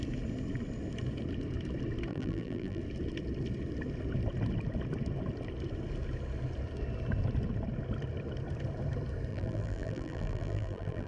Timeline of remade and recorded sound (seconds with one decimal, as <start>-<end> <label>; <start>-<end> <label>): 0.0-2.1 recorded; 2.1-2.8 remade; 2.8-9.3 recorded; 9.3-11.1 remade